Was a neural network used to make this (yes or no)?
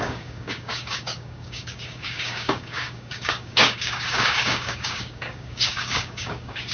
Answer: yes